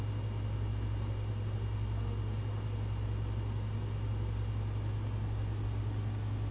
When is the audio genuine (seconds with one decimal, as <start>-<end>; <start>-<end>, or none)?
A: 0.0-6.5